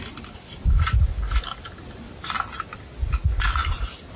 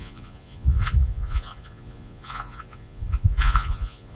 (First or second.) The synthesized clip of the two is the second